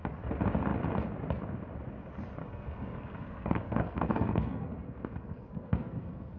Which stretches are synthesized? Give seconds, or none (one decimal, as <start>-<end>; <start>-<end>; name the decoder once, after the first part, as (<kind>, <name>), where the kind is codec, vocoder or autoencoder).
2.4-6.4 (codec, SNAC)